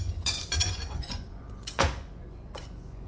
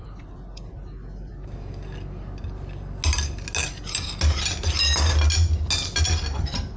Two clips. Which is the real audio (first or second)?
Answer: second